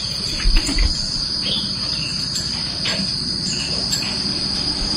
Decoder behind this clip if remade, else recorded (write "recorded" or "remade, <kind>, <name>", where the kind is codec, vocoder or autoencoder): remade, vocoder, BigVGAN v2